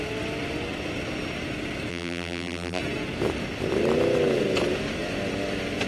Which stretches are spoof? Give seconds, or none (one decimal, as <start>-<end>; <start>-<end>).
1.9-2.8